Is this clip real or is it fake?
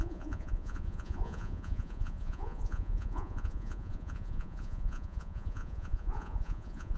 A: fake